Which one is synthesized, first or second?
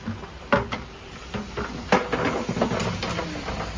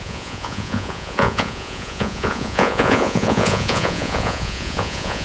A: second